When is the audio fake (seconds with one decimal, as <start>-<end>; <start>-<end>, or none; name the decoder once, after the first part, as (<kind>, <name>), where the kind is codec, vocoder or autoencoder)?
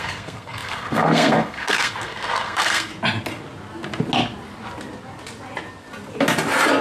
0.0-2.9 (codec, SNAC)